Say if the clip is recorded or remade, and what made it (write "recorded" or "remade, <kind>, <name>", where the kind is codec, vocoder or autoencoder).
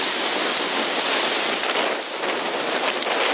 recorded